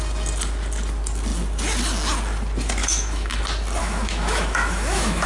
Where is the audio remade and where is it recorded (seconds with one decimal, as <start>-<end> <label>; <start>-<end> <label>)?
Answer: 0.0-2.8 recorded; 2.8-3.4 remade; 3.4-3.8 recorded; 3.8-5.3 remade